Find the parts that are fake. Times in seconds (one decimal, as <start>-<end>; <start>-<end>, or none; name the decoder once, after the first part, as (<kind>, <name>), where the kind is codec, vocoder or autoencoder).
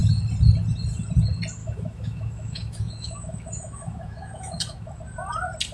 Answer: 1.6-5.0 (autoencoder, DAC-VAE)